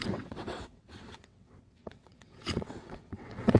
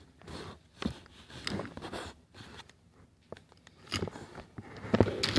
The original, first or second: second